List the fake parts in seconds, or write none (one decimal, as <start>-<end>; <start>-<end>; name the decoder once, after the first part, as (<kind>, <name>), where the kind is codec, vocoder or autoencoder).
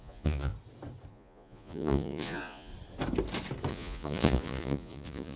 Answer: 0.0-0.5 (vocoder, Vocos); 1.1-2.7; 3.7-5.4